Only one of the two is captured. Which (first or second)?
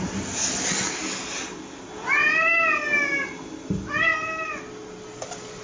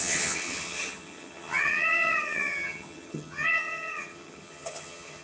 first